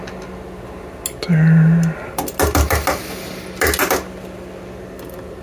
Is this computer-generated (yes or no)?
no